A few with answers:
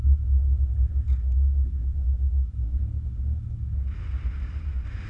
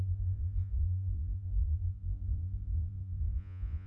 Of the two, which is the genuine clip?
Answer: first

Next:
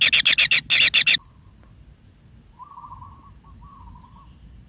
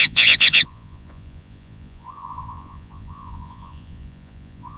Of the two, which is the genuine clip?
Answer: first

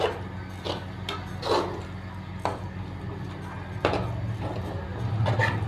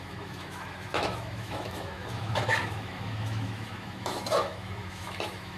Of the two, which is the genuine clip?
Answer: first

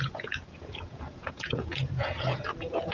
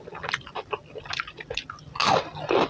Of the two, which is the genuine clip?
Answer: second